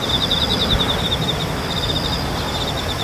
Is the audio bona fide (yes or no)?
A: yes